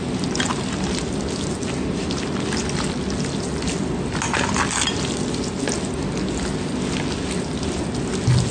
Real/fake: real